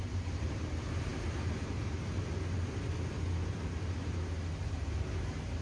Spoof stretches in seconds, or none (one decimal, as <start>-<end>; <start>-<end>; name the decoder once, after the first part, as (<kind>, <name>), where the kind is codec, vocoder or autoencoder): none